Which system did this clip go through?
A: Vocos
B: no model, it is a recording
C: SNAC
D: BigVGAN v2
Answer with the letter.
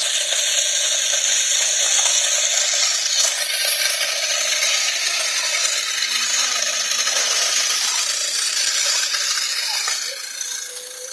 B